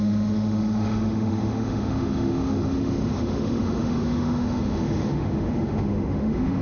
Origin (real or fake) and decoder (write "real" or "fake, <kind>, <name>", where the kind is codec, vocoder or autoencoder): fake, autoencoder, DAC-VAE